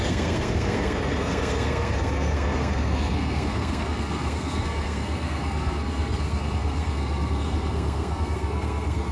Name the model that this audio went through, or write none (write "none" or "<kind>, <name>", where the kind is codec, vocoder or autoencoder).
codec, SNAC